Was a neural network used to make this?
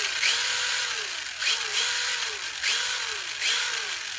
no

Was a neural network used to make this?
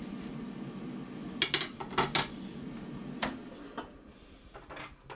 no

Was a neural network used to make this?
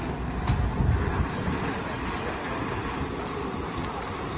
no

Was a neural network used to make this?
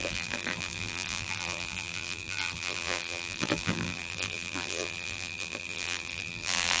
yes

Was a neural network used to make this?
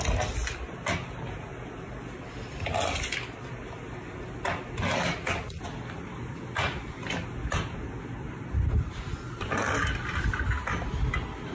no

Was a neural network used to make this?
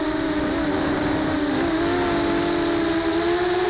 no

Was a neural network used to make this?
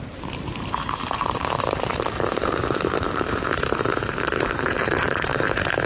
yes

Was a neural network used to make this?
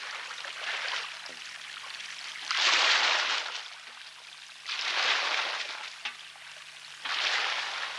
no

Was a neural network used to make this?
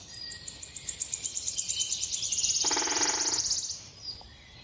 yes